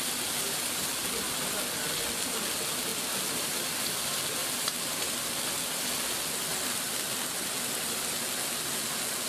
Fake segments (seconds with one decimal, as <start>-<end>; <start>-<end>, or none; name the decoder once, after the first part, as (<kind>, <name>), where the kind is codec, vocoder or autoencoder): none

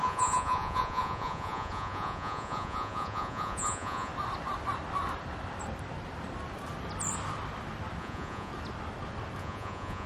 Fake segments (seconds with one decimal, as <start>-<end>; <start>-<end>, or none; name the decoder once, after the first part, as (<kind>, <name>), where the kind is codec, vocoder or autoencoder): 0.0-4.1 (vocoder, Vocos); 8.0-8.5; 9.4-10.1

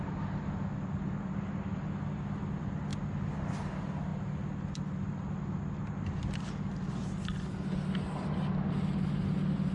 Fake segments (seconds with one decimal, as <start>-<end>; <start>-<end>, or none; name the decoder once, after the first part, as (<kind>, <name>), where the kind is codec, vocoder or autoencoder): none

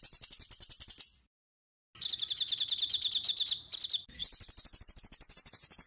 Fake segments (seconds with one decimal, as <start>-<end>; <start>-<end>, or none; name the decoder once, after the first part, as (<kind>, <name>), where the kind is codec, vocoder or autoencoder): none

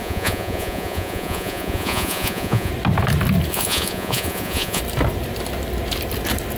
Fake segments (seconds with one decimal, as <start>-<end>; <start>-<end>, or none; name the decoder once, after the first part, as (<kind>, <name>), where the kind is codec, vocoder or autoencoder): 0.0-2.7 (vocoder, Vocos); 3.5-4.8

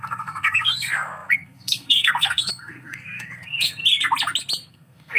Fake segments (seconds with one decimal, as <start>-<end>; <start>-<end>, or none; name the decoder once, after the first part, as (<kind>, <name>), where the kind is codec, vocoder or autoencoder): 0.0-3.8 (codec, SNAC); 4.7-5.2